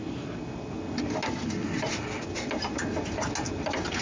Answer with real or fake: real